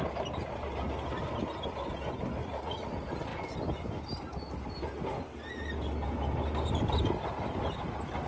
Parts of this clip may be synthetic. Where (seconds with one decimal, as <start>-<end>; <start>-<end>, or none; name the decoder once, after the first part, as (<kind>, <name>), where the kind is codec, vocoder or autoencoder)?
2.4-2.9 (vocoder, Vocos)